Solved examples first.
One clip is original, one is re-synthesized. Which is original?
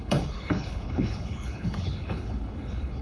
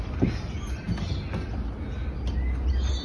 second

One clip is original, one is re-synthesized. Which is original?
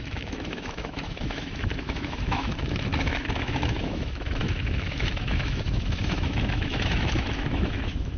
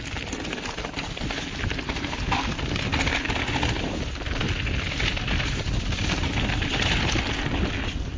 second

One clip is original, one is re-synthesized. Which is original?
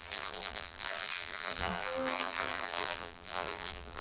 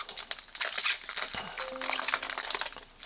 second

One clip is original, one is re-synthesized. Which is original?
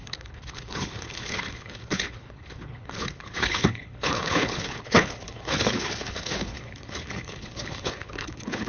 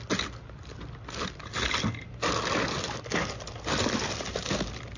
second